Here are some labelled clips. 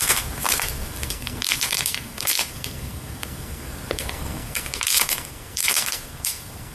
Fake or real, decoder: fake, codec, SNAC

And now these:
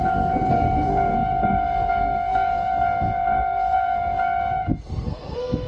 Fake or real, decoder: fake, codec, SNAC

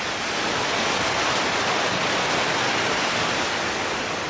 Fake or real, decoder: real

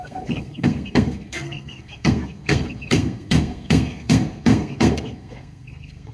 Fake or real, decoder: fake, codec, SNAC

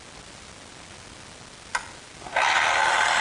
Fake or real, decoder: real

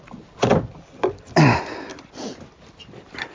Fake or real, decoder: real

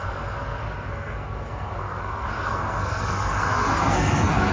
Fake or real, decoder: fake, codec, SNAC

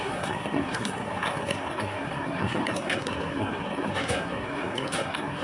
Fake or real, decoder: fake, codec, SNAC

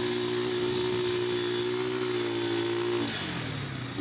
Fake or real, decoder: real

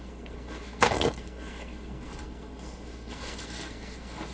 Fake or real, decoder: fake, codec, SNAC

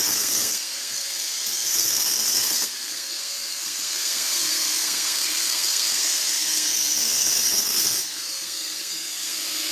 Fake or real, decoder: fake, codec, SNAC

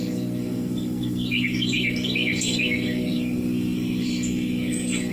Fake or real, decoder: fake, codec, SNAC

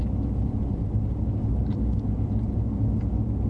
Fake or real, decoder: real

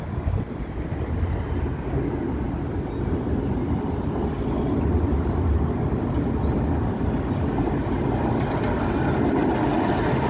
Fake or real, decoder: real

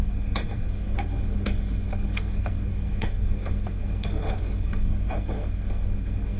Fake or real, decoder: fake, codec, SNAC